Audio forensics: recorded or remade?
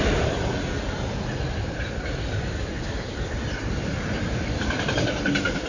recorded